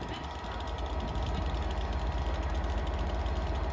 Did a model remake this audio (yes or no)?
no